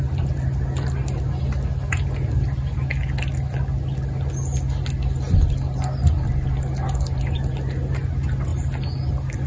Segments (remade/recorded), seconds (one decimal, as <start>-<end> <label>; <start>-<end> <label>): 0.0-9.5 recorded